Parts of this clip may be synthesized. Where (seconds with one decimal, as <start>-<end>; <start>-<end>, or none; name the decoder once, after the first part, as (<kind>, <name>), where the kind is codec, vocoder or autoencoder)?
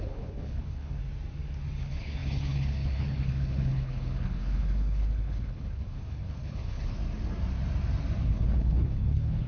0.0-1.0 (codec, HILCodec); 1.8-7.0; 8.3-9.5